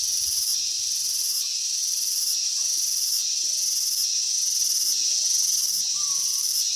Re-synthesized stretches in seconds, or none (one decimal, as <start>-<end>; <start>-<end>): 0.0-3.2; 6.1-6.8